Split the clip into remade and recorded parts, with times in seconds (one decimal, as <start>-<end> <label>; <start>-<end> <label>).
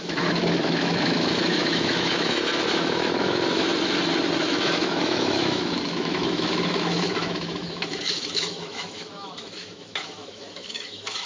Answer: 0.0-3.7 remade; 3.7-4.4 recorded; 4.4-11.3 remade